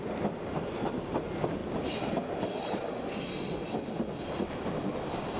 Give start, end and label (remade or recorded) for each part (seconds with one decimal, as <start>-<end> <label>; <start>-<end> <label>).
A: 0.0-5.4 recorded